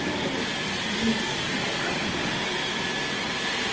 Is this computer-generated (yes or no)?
no